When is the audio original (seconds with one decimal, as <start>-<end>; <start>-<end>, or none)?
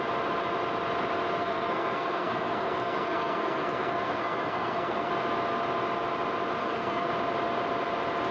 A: 0.0-1.4; 5.1-6.6; 7.1-8.3